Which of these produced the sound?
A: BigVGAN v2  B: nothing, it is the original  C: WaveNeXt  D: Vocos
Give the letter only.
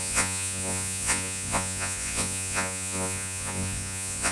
D